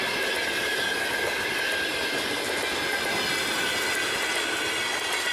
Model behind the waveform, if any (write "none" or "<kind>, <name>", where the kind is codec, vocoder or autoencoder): none